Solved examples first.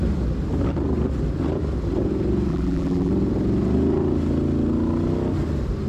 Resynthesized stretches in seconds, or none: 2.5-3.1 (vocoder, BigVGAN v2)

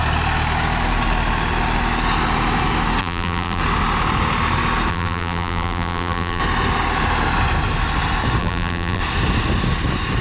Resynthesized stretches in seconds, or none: 3.0-3.6 (vocoder, BigVGAN v2); 4.9-6.4; 8.4-9.0